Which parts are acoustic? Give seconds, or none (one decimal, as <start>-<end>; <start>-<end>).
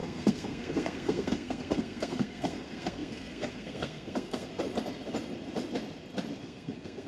4.5-6.4